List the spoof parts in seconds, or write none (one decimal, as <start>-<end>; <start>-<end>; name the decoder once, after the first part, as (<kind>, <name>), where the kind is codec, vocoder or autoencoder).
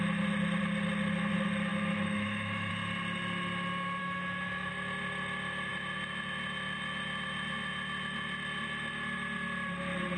1.7-2.7 (autoencoder, DAC-VAE); 4.0-4.7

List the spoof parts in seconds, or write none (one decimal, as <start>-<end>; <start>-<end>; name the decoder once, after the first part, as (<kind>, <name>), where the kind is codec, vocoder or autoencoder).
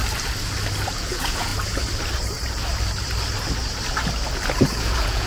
0.9-1.5 (vocoder, Vocos); 4.7-5.3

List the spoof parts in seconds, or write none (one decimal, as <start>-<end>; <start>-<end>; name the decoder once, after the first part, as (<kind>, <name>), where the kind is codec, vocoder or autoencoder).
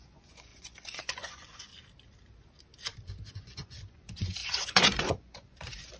0.0-1.7 (vocoder, Vocos); 3.3-6.0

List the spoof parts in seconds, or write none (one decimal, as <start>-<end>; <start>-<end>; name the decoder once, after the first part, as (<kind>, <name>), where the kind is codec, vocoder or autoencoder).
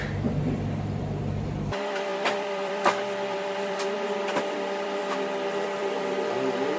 0.0-6.8 (vocoder, BigVGAN v2)